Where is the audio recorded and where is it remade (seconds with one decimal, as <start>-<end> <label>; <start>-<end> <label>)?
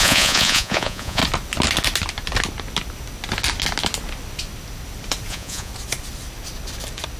0.0-1.2 remade; 1.2-5.3 recorded; 5.3-5.7 remade; 5.7-7.2 recorded